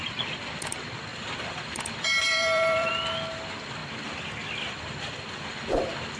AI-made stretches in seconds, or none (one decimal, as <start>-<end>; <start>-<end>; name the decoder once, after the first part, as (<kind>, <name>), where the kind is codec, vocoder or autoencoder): 1.1-2.9 (vocoder, BigVGAN v2); 3.8-6.2